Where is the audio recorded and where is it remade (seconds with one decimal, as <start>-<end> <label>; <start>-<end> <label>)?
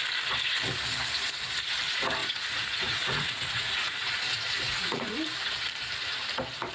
0.0-2.2 recorded; 2.2-5.1 remade; 5.1-6.7 recorded